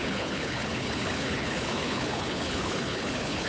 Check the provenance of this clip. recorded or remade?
remade